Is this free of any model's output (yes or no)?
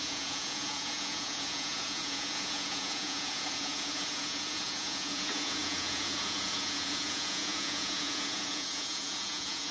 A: no